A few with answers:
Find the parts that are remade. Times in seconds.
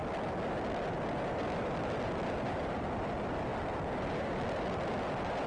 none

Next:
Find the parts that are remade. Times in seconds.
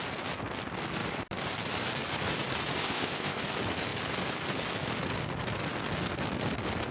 2.8-3.4 (codec, ZipCodec)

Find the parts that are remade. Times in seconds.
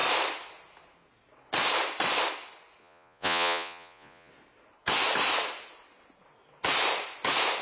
2.8-4.3 (vocoder, Vocos)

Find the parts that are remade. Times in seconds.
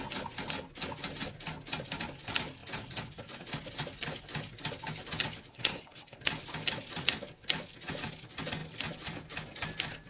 5.5-6.2 (codec, SNAC)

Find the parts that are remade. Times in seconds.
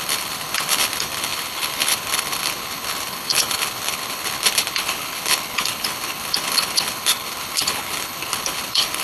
0.0-9.0 (codec, HILCodec)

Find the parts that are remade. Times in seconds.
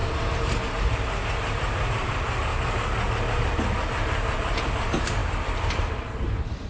0.0-2.5 (vocoder, BigVGAN v2); 3.3-6.7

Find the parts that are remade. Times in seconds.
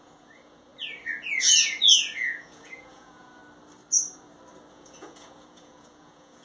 0.0-0.7 (vocoder, Vocos); 1.4-3.4; 4.7-6.4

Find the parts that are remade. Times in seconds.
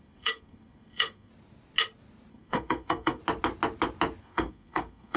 0.0-1.3 (codec, SNAC); 2.3-3.2; 4.2-5.2